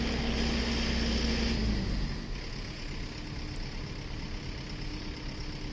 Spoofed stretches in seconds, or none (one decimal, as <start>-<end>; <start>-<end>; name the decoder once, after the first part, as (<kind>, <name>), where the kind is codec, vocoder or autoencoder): none

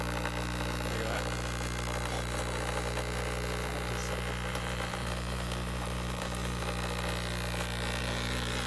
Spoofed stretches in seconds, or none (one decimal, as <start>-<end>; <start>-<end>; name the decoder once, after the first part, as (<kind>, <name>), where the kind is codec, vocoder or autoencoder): 4.5-6.6 (vocoder, BigVGAN v2); 8.0-8.7

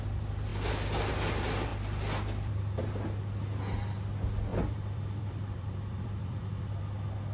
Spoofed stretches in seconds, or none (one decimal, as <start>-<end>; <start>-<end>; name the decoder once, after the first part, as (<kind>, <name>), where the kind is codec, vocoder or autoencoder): 0.5-1.1 (vocoder, BigVGAN v2); 4.5-6.8

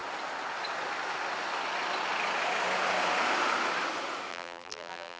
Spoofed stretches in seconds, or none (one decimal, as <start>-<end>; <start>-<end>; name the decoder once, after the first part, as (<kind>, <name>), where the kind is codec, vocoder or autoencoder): 4.3-5.2 (vocoder, BigVGAN v2)

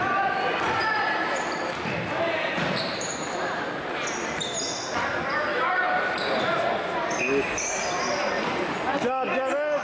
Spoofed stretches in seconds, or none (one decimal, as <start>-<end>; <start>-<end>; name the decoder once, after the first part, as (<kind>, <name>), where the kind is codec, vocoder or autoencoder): 0.8-4.4 (vocoder, BigVGAN v2); 5.5-6.4

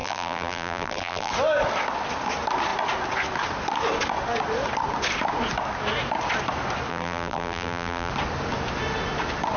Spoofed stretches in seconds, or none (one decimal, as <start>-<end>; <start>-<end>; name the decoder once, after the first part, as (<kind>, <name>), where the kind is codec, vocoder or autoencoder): 0.0-1.3 (vocoder, BigVGAN v2); 6.9-8.1

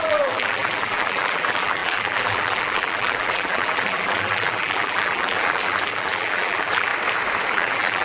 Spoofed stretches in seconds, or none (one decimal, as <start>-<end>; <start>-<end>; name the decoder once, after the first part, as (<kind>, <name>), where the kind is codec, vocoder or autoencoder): 0.0-6.9 (vocoder, BigVGAN v2); 7.5-8.0

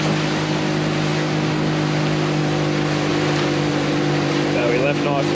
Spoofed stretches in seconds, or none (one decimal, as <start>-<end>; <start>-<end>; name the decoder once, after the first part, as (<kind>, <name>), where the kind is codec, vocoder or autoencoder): 3.1-4.7 (vocoder, BigVGAN v2)